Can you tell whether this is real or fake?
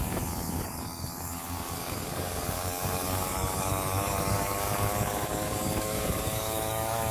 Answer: fake